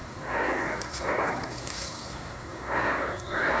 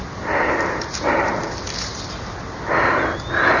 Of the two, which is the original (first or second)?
second